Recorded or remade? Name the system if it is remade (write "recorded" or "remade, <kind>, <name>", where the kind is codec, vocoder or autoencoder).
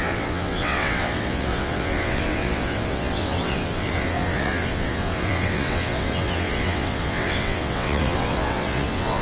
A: remade, vocoder, WaveNeXt